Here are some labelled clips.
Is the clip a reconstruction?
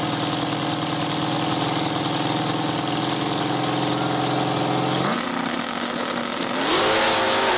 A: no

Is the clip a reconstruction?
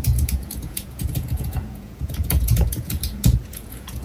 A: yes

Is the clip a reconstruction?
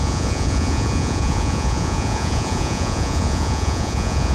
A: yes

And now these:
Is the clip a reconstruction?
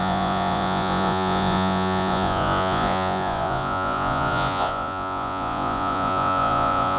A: yes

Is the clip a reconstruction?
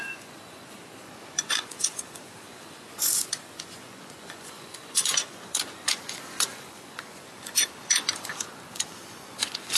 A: yes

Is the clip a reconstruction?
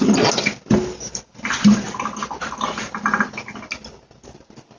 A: no